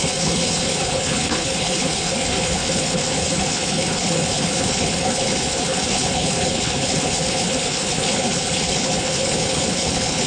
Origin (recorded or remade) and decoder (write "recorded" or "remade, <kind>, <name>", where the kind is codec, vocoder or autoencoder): remade, codec, HILCodec